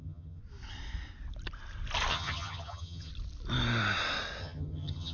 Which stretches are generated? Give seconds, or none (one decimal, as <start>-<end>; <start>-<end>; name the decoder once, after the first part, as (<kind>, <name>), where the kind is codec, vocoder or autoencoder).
0.0-0.4 (vocoder, HiFi-GAN); 2.1-3.1; 4.4-5.1